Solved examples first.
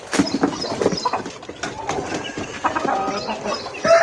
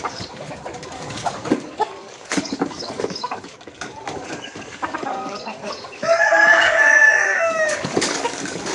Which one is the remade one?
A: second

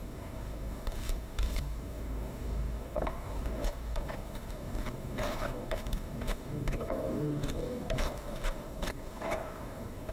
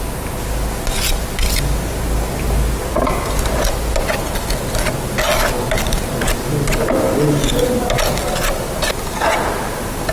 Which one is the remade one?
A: first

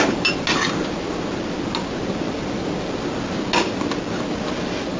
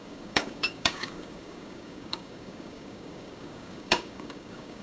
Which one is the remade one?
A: second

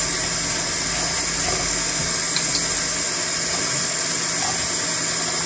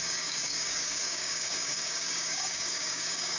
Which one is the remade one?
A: second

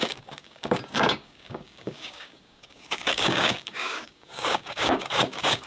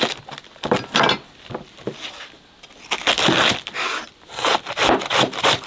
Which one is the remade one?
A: first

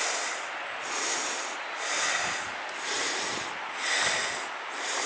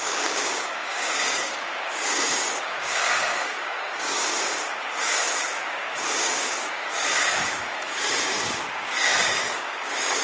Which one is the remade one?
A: second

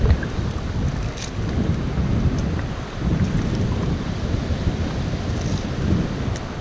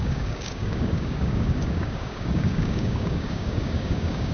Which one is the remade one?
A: second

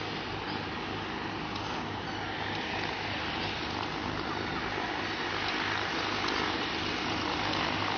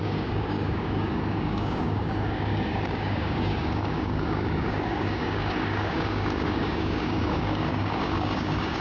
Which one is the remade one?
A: second